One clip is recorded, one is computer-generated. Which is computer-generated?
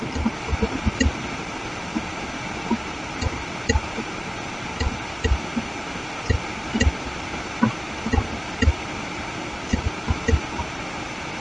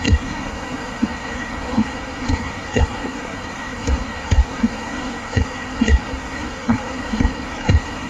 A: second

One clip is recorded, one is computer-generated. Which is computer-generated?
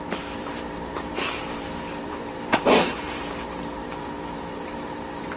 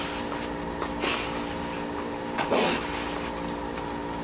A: first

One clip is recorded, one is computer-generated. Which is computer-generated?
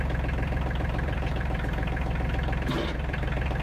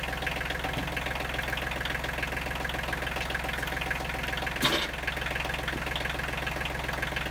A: first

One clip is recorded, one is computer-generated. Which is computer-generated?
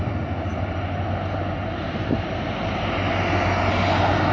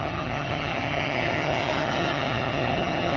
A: second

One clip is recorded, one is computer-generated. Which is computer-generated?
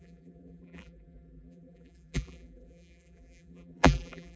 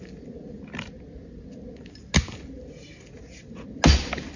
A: first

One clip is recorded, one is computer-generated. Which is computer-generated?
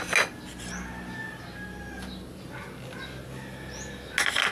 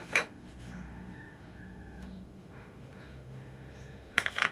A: second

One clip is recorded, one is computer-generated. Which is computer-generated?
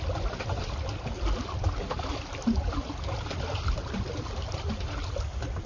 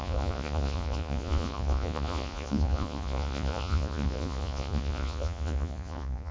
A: second